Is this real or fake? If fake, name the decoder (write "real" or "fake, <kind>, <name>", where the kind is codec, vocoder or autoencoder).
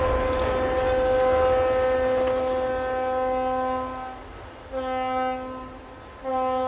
real